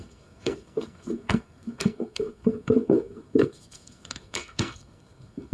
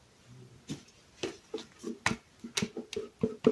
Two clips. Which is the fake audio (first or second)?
first